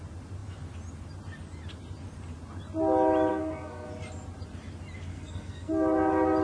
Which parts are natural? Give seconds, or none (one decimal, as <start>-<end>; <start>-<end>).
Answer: 0.0-3.3; 3.9-5.1; 5.7-6.4